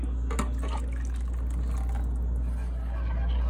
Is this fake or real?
real